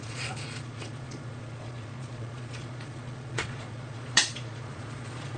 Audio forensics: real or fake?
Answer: fake